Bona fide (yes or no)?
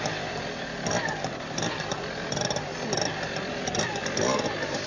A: yes